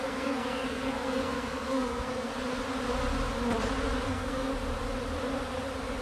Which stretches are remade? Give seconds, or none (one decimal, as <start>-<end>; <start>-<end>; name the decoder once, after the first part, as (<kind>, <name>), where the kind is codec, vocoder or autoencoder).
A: 0.0-2.3 (codec, SNAC); 4.1-4.5